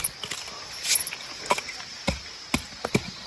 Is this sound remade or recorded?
recorded